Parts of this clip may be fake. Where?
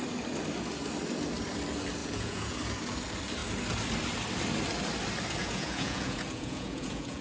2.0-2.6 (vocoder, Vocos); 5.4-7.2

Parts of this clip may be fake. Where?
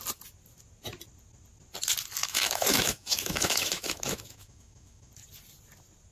2.2-5.1 (autoencoder, DAC-VAE)